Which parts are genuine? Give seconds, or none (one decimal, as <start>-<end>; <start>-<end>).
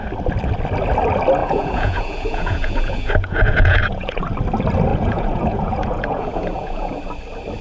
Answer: 0.0-1.4; 4.2-4.9; 7.0-7.6